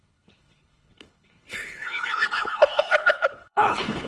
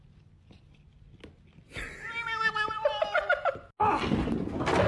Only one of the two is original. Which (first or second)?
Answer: second